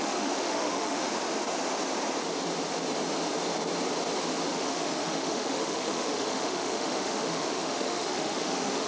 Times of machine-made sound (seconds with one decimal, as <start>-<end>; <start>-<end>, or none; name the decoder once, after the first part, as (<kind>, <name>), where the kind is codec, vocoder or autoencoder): 0.0-1.1 (autoencoder, DAC-VAE); 4.5-8.9